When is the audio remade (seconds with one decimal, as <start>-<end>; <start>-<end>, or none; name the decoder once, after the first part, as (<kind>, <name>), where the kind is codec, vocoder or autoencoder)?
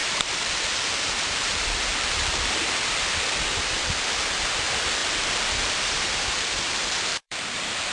0.0-2.7 (vocoder, BigVGAN v2); 5.0-5.9; 7.1-7.9